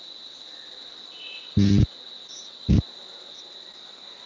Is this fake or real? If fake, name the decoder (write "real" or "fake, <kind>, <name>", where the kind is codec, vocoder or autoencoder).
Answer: real